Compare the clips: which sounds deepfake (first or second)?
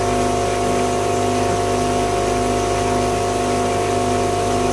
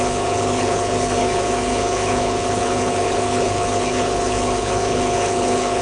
second